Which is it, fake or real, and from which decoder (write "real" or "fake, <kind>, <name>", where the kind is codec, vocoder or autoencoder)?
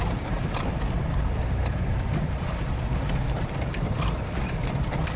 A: fake, vocoder, BigVGAN v2